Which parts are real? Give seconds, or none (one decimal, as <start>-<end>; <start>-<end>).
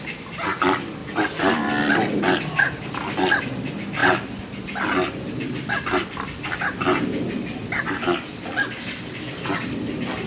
4.0-6.6